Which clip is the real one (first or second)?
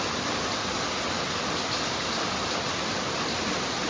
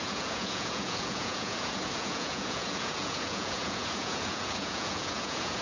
first